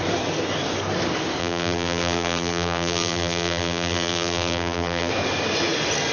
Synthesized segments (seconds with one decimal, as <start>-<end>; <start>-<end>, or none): 1.4-5.1